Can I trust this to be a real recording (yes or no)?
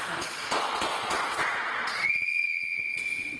no